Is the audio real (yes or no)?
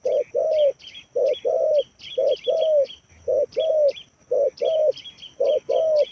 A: yes